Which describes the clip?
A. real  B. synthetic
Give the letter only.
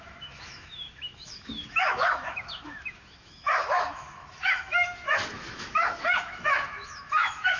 B